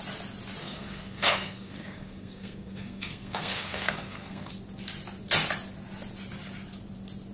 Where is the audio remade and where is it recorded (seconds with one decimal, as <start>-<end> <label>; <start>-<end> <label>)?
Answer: 0.0-0.6 recorded; 0.6-4.5 remade; 4.5-7.3 recorded